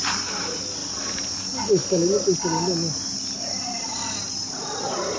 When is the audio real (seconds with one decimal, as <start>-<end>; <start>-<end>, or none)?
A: 0.0-5.2